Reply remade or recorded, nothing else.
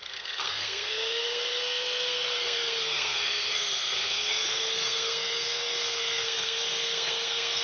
remade